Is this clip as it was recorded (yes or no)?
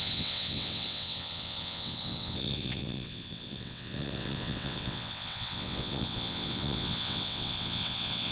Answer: no